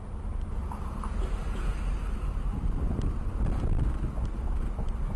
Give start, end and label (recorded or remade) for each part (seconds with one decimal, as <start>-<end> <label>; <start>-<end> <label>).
0.0-5.2 recorded

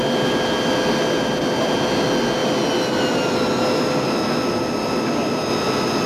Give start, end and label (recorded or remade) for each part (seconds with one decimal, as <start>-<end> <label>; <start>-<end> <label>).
0.0-6.1 recorded